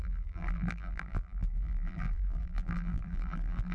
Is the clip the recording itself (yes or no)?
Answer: no